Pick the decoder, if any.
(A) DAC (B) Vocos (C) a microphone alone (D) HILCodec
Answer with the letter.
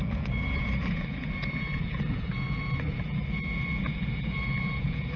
B